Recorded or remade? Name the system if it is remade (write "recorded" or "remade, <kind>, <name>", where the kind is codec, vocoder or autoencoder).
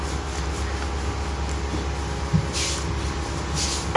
recorded